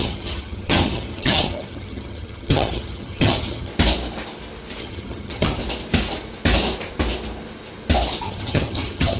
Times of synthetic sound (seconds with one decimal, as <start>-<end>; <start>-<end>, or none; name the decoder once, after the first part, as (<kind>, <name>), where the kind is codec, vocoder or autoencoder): 0.0-3.7 (vocoder, HiFi-GAN); 4.8-5.6; 8.2-9.2